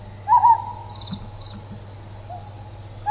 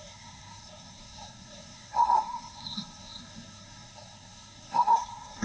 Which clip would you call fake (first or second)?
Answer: second